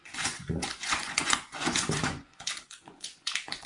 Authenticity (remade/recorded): remade